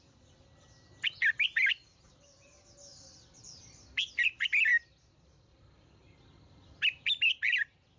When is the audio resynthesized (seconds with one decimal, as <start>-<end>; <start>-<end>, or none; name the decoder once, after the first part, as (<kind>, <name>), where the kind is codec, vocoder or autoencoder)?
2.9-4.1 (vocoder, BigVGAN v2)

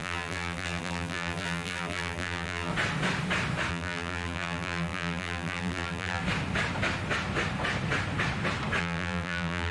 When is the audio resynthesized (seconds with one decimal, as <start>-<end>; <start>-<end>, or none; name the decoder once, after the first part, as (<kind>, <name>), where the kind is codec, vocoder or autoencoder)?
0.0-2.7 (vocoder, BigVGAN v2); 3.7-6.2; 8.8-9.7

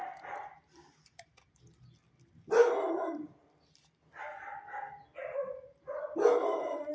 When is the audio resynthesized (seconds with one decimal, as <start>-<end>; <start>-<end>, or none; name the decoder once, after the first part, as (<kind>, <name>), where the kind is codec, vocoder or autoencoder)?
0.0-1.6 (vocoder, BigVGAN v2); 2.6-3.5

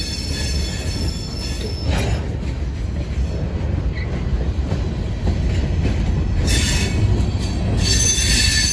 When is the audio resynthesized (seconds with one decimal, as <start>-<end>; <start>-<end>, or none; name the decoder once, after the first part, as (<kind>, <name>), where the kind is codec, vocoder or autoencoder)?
4.3-4.9 (vocoder, BigVGAN v2)